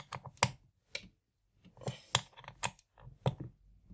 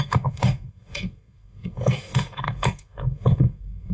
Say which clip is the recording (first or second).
first